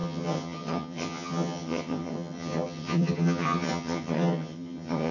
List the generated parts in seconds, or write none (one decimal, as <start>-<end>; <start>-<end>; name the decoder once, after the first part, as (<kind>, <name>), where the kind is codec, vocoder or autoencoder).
0.0-5.1 (vocoder, HiFi-GAN)